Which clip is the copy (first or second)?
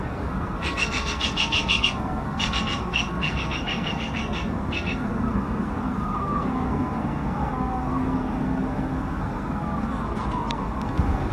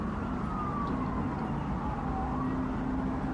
first